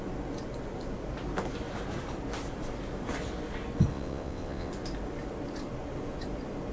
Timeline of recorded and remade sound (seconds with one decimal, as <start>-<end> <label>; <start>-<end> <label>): 0.0-3.9 recorded; 3.9-4.7 remade; 4.7-6.7 recorded